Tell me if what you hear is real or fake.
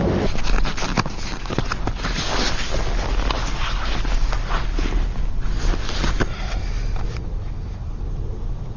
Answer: real